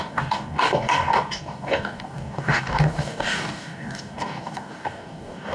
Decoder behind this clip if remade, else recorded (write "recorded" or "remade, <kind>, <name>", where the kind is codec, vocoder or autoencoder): remade, codec, DAC